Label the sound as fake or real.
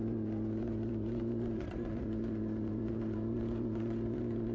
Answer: fake